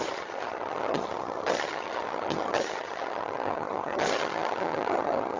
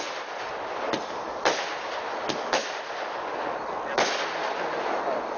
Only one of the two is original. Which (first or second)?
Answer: second